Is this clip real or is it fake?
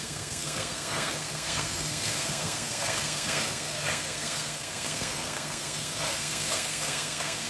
fake